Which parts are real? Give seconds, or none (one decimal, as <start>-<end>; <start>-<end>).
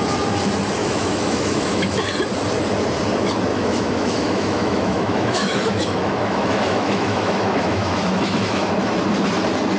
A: 0.0-0.8; 2.0-3.5; 8.7-9.8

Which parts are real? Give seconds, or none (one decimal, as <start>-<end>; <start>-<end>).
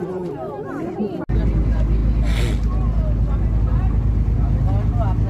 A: 0.0-5.3